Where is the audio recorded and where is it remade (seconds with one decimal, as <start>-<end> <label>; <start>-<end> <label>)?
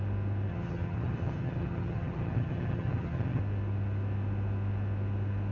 0.0-0.5 recorded; 0.5-3.4 remade; 3.4-5.5 recorded